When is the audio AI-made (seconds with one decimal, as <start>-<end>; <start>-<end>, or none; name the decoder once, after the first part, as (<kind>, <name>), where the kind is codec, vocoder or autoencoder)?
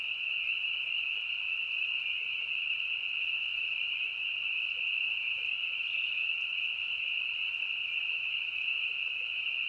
none